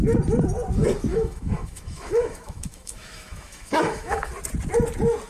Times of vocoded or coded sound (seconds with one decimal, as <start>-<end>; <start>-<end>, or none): 1.1-4.3